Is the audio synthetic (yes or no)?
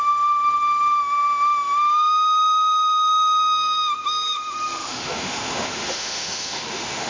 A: yes